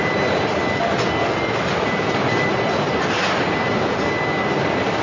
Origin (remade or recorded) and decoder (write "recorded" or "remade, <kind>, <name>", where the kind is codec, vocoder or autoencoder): recorded